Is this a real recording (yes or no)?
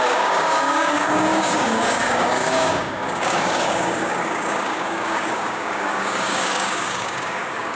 no